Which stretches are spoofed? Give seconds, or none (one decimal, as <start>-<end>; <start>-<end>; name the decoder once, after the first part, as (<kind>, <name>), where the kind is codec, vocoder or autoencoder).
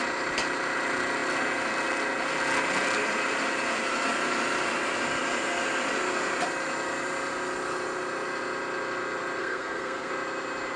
9.4-10.1 (codec, SNAC)